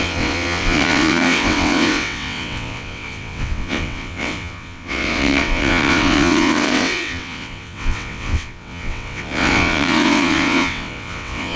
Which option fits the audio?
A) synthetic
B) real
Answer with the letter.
A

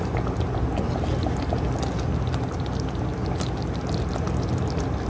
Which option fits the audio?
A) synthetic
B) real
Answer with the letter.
B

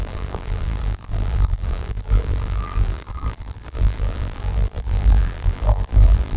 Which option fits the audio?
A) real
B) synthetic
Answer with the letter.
B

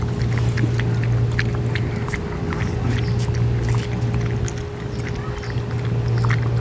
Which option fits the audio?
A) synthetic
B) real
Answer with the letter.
B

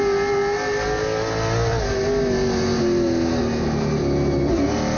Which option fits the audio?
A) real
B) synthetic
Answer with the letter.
A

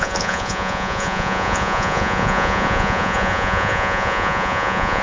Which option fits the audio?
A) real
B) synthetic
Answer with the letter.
B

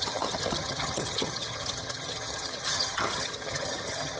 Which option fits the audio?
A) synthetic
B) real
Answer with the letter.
A